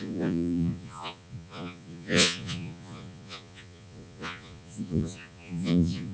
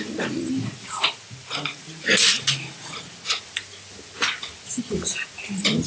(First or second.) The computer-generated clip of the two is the first